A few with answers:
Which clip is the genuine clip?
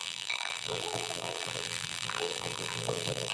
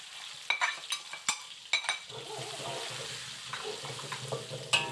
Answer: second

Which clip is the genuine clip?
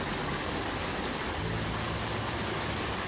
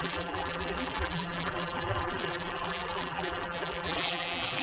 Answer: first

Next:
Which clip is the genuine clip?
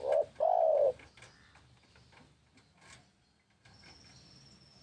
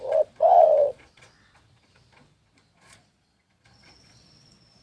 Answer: first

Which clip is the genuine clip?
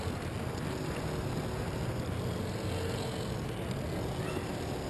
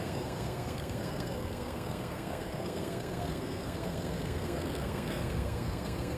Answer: first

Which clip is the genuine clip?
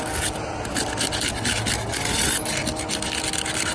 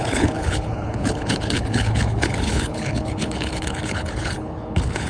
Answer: first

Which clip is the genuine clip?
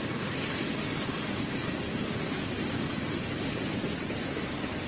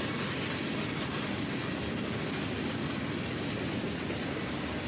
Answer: second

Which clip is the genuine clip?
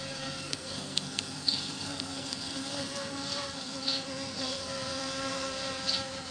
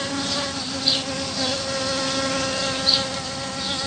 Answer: second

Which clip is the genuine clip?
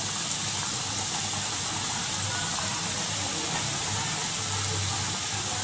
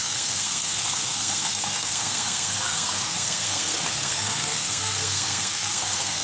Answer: first